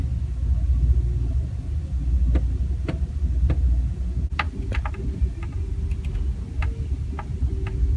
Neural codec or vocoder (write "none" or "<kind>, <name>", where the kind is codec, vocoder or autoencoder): none